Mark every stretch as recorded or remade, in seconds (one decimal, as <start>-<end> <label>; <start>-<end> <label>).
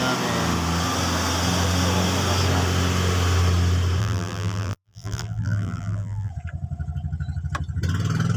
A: 0.0-4.0 recorded; 4.0-6.3 remade; 6.3-8.4 recorded